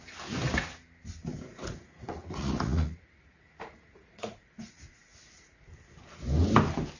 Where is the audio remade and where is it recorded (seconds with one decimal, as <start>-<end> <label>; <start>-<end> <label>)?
0.0-1.5 recorded; 1.5-5.7 remade; 5.7-7.0 recorded